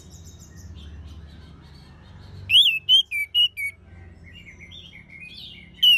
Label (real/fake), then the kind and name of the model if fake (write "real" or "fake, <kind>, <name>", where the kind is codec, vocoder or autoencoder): real